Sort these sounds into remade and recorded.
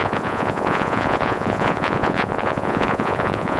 remade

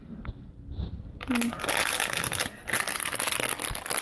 recorded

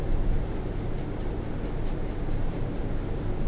recorded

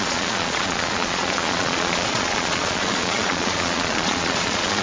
remade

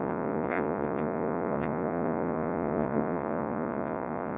remade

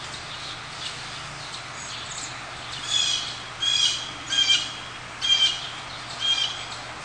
recorded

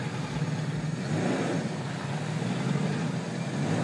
recorded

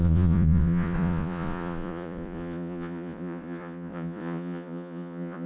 remade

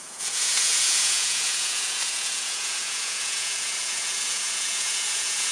remade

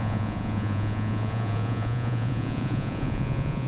remade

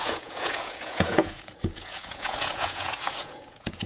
remade